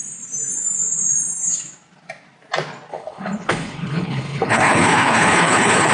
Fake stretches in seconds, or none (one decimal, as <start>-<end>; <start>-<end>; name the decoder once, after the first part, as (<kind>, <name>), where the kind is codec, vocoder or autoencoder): 2.9-5.9 (codec, HILCodec)

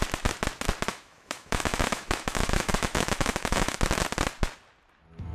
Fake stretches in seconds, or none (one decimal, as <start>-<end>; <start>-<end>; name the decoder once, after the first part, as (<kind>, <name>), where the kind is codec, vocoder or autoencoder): 0.9-3.8 (autoencoder, DAC-VAE)

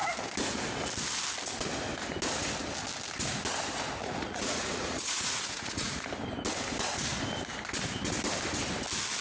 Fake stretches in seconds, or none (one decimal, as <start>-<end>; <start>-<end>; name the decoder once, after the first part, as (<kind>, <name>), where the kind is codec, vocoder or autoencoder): 4.0-6.1 (vocoder, Vocos)

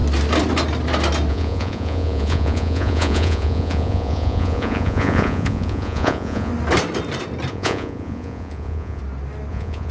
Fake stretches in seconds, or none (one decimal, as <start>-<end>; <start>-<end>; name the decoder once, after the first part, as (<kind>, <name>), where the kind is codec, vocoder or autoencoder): 1.3-6.5 (vocoder, Vocos); 7.5-9.0; 9.5-9.9

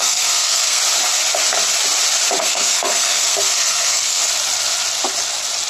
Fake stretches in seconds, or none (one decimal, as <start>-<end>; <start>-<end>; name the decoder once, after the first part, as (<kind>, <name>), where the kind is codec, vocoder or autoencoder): 0.0-0.8 (codec, SNAC); 2.4-4.2

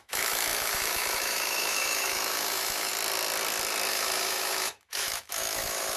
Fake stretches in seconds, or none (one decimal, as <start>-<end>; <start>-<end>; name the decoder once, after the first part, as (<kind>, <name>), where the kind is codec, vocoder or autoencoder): 0.0-2.9 (autoencoder, DAC-VAE); 3.9-6.0